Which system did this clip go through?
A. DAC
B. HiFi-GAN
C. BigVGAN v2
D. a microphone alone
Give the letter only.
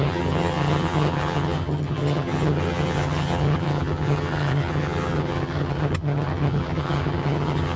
B